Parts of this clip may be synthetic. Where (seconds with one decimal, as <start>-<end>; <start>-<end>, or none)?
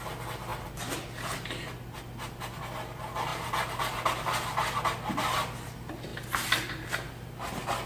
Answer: none